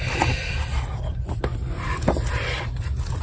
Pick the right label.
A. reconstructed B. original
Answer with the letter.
B